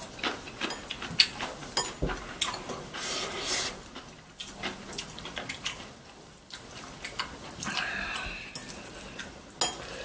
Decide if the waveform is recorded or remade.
recorded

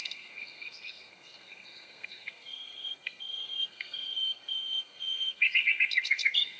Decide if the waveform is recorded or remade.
remade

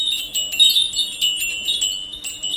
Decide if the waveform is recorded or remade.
recorded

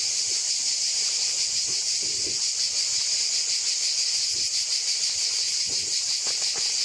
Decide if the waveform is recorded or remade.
recorded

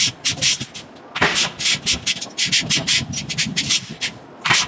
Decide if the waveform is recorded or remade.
recorded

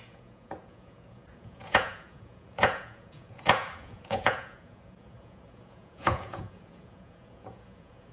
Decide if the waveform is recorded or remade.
remade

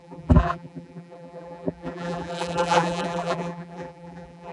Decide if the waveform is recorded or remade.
remade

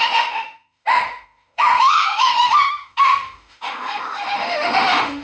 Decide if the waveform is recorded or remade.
remade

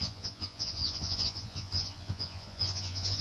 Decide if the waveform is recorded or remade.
remade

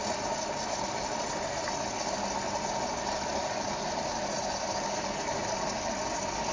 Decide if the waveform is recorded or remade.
recorded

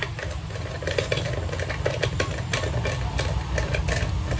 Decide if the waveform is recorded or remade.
recorded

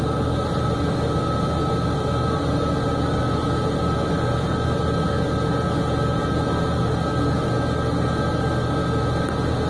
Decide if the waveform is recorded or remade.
recorded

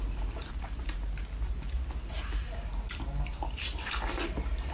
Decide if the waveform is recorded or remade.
remade